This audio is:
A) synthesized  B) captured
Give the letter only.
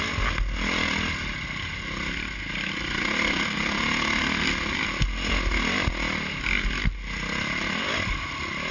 B